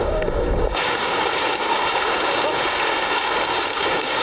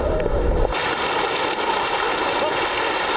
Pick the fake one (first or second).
first